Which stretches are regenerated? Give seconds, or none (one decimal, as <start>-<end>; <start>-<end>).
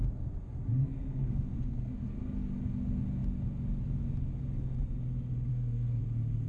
0.8-1.9; 5.5-6.0